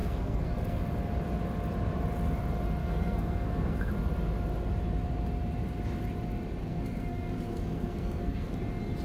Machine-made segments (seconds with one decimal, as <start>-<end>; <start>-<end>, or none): 0.0-0.8; 2.8-3.9; 6.6-8.5